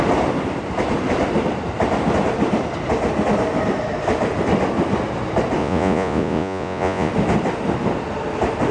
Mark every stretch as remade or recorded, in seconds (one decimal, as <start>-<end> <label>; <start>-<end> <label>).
0.0-5.6 recorded; 5.6-7.1 remade; 7.1-8.7 recorded